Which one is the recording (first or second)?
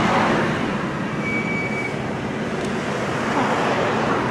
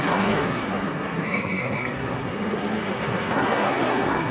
first